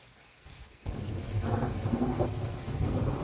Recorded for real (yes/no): no